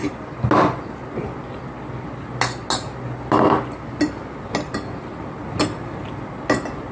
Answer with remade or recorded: recorded